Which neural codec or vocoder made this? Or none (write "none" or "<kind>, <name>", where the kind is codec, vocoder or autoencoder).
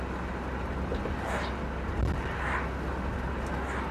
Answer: none